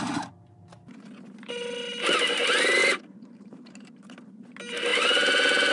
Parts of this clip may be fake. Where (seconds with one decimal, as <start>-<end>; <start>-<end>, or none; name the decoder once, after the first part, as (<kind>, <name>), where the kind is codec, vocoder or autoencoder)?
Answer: 2.8-4.1 (vocoder, BigVGAN v2)